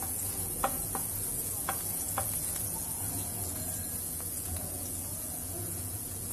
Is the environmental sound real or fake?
fake